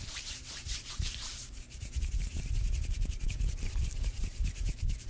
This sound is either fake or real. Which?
fake